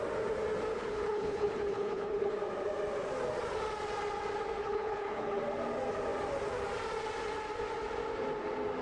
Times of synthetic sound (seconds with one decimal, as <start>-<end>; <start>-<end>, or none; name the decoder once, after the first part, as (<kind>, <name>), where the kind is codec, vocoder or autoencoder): 0.7-2.4 (codec, HILCodec); 4.6-5.4